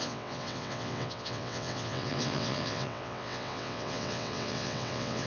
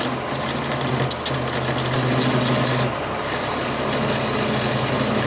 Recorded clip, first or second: second